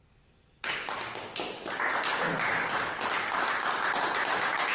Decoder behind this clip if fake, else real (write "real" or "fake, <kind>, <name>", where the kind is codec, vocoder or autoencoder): real